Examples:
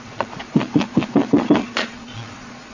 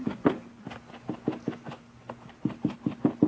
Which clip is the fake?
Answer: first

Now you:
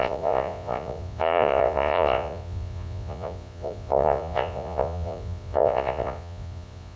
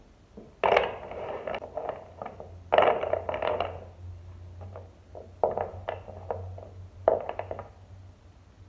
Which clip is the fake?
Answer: first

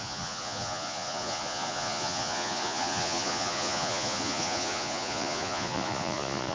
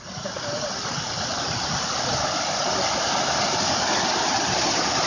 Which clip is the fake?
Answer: first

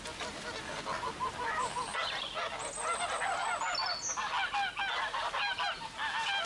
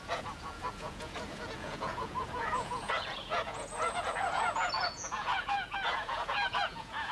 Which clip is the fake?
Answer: second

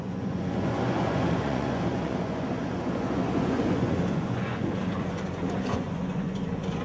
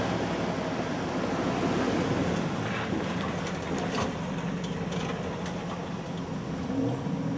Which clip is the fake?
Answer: first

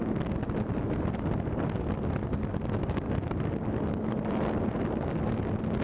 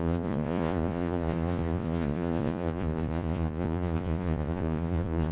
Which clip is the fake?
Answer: second